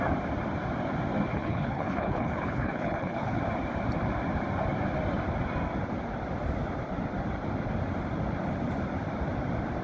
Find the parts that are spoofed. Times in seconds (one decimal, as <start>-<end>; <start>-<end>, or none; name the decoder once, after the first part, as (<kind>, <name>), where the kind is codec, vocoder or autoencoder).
1.3-3.4 (codec, HILCodec)